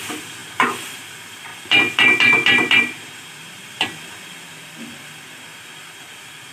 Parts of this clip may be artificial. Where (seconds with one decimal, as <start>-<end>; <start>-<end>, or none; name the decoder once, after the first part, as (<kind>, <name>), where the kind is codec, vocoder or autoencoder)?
0.0-6.5 (vocoder, BigVGAN v2)